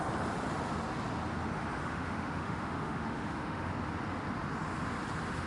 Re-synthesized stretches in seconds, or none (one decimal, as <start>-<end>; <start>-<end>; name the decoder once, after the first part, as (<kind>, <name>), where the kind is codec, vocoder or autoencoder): 1.8-3.7 (autoencoder, DAC-VAE)